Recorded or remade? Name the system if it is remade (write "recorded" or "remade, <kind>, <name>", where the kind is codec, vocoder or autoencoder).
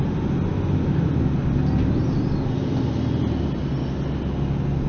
recorded